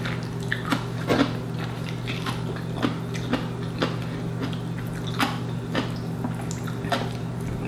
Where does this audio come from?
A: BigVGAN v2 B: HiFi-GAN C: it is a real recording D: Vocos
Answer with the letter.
C